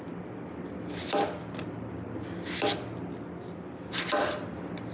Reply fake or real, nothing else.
real